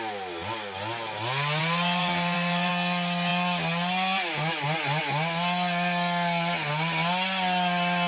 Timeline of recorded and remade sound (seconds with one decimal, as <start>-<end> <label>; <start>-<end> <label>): 0.0-1.6 recorded; 1.6-2.7 remade; 2.7-8.1 recorded